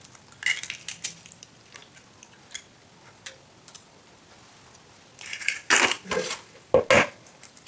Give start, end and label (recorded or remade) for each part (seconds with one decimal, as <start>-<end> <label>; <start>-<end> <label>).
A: 0.0-7.7 recorded